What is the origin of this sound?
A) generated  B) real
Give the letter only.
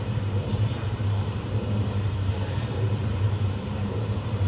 A